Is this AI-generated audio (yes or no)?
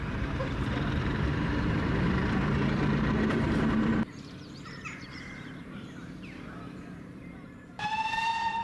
yes